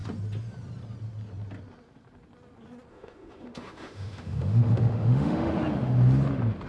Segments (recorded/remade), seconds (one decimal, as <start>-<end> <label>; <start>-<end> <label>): 0.0-2.9 recorded; 2.9-5.5 remade; 5.5-6.7 recorded